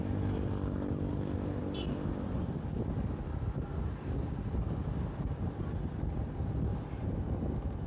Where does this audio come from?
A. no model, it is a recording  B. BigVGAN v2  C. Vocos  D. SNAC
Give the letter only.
A